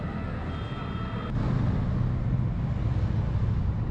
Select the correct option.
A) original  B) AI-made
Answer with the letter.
A